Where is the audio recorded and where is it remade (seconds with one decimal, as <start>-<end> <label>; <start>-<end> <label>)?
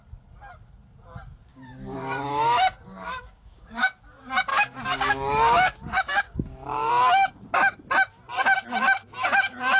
0.0-1.5 recorded; 1.5-4.0 remade; 4.0-4.5 recorded; 4.5-6.9 remade; 6.9-9.8 recorded